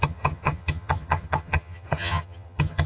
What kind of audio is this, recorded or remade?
remade